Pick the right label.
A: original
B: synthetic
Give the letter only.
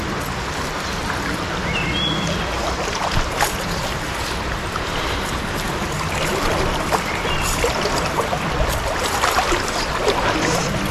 A